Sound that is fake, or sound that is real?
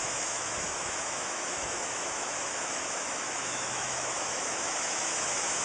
fake